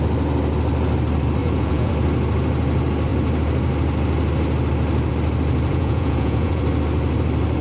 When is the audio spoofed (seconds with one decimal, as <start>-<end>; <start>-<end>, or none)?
1.4-1.9; 5.7-6.6